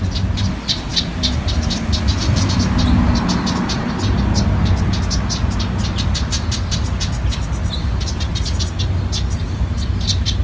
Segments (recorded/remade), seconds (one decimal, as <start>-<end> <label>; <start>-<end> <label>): 0.0-10.4 recorded